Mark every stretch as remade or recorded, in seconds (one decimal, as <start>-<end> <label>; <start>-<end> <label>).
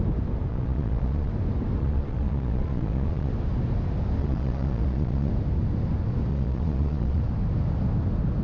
0.0-0.5 recorded; 0.5-1.3 remade; 1.3-1.8 recorded; 1.8-3.3 remade; 3.3-4.2 recorded; 4.2-5.3 remade; 5.3-6.3 recorded; 6.3-7.2 remade; 7.2-8.4 recorded